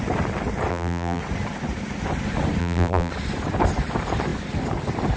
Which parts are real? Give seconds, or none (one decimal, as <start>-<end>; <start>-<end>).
0.0-0.7; 1.2-2.6; 3.1-5.2